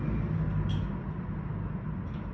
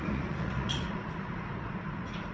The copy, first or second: second